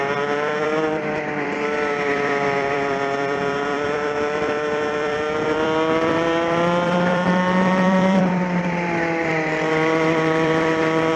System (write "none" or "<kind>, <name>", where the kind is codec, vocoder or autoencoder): vocoder, BigVGAN v2